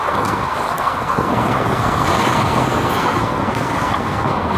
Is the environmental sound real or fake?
fake